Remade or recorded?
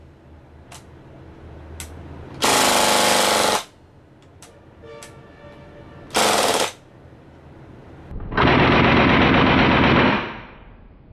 recorded